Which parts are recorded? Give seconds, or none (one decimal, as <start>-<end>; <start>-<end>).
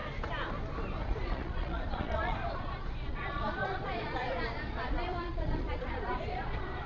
0.0-1.0